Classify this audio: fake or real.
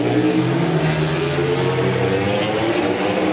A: real